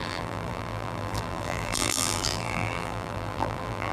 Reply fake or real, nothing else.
fake